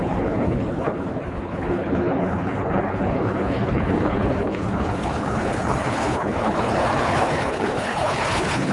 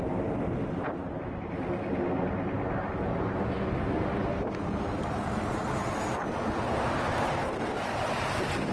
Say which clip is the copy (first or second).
first